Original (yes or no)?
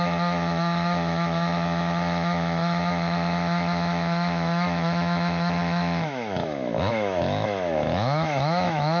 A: no